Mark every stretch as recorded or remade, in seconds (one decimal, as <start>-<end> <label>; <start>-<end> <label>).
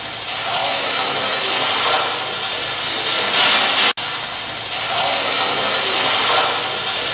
0.0-0.6 recorded; 0.6-1.5 remade; 1.5-7.1 recorded